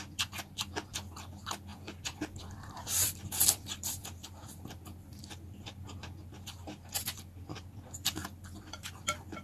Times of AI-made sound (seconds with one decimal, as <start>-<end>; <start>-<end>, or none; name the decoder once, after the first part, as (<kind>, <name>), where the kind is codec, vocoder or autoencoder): 1.7-5.2 (vocoder, BigVGAN v2); 8.2-8.9